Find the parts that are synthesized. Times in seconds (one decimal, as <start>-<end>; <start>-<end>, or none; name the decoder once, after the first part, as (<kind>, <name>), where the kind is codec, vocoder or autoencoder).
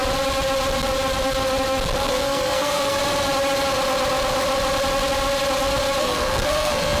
2.0-3.0 (codec, SNAC); 6.0-7.0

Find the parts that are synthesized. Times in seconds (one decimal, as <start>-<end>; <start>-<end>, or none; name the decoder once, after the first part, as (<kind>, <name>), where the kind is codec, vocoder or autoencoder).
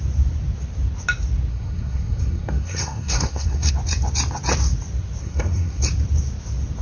1.5-3.7 (codec, SNAC); 5.2-5.8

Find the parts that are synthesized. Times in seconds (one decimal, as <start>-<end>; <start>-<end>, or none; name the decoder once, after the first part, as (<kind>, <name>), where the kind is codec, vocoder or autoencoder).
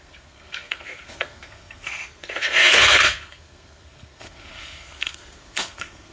0.0-6.1 (codec, SNAC)